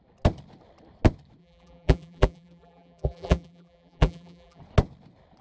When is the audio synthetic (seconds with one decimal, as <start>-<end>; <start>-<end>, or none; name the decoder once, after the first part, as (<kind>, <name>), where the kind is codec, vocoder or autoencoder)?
1.4-4.6 (vocoder, BigVGAN v2)